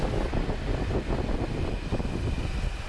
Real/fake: real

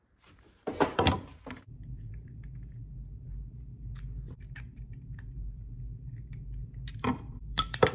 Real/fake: fake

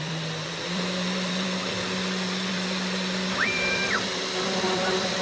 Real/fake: fake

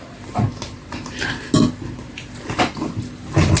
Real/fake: real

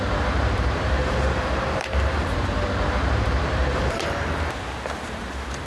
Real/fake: fake